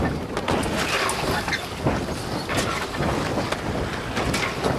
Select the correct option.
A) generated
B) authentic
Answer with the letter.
B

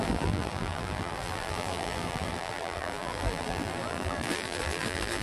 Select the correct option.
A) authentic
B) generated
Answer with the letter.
B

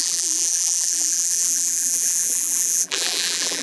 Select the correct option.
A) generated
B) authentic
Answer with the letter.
A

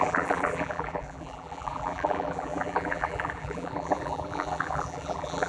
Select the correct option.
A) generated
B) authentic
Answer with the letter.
A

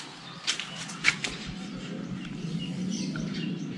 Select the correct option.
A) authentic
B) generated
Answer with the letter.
B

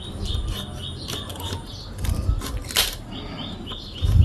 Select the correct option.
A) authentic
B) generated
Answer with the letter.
A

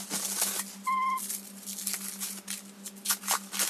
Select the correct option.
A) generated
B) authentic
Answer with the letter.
B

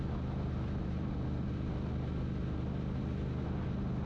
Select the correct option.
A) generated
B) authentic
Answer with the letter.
B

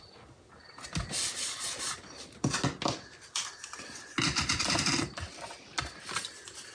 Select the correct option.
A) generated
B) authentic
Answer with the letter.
B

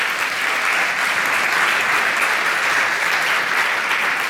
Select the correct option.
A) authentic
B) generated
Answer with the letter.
A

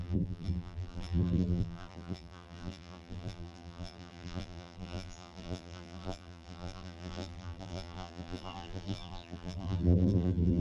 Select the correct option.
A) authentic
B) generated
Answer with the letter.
B